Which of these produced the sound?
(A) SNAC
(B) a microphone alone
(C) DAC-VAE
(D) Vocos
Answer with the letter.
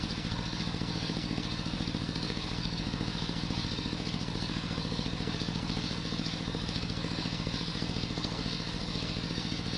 A